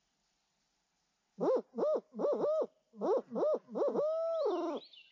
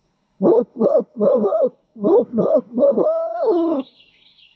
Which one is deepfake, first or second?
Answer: second